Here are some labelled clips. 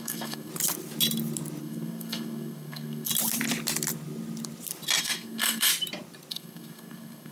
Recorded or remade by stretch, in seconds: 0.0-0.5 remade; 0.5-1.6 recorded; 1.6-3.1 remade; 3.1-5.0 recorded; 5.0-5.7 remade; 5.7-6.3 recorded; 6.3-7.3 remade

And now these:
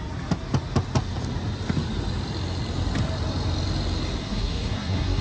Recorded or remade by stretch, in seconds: 0.0-4.2 recorded; 4.2-5.2 remade

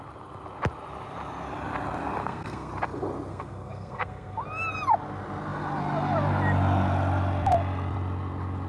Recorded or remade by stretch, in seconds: 0.0-2.2 recorded; 2.2-2.7 remade; 2.7-3.3 recorded; 3.3-4.4 remade; 4.4-8.7 recorded

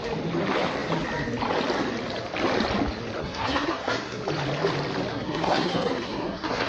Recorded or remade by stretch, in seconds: 0.0-3.2 recorded; 3.2-4.2 remade; 4.2-5.1 recorded; 5.1-6.7 remade

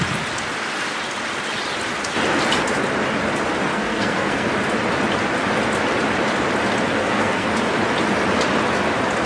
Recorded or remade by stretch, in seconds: 0.0-3.7 recorded; 3.7-4.5 remade; 4.5-7.0 recorded; 7.0-7.5 remade; 7.5-9.3 recorded

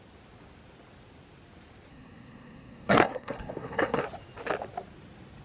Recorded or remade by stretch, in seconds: 0.0-1.9 recorded; 1.9-4.0 remade; 4.0-5.4 recorded

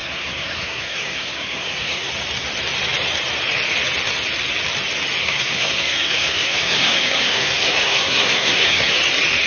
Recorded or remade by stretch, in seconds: 0.0-2.1 remade; 2.1-5.2 recorded; 5.2-8.9 remade; 8.9-9.5 recorded